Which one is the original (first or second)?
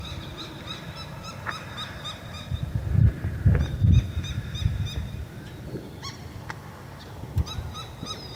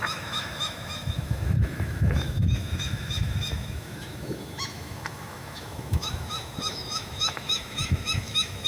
first